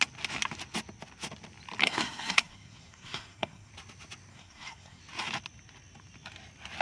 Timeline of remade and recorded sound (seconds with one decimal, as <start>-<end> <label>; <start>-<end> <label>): 0.0-1.8 recorded; 1.8-3.7 remade; 3.7-4.3 recorded; 4.3-5.0 remade; 5.0-6.8 recorded